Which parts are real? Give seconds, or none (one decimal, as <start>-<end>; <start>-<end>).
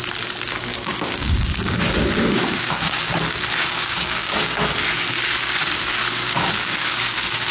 0.0-0.7; 3.1-3.6; 4.6-6.2